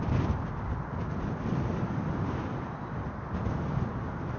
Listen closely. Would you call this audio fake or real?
real